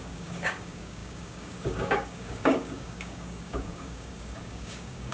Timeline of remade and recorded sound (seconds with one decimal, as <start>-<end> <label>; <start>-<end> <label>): 0.0-5.1 remade